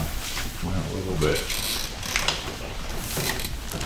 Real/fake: real